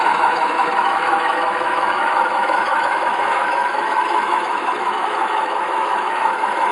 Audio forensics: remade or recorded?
remade